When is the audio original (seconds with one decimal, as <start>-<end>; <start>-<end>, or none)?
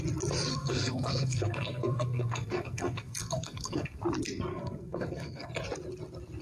0.0-0.5; 4.0-4.5; 5.5-6.4